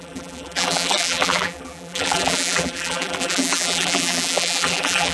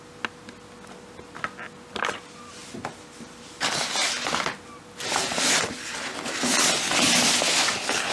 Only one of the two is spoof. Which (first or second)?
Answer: first